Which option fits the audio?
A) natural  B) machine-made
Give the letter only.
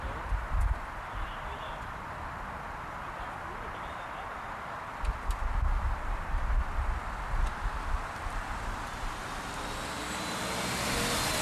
B